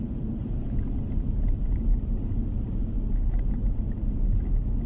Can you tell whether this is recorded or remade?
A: recorded